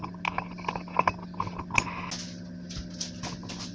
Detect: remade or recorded recorded